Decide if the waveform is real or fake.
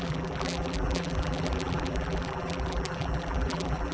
fake